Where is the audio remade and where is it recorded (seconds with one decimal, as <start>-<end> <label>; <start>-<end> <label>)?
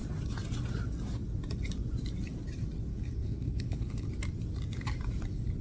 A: 0.0-2.9 recorded; 2.9-4.1 remade; 4.1-5.6 recorded